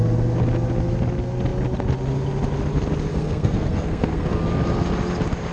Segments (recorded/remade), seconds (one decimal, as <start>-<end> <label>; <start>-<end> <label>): 0.0-3.1 recorded; 3.1-4.4 remade; 4.4-5.5 recorded